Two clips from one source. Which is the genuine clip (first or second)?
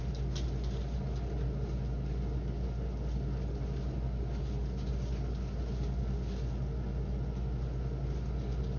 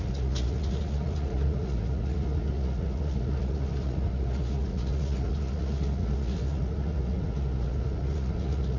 first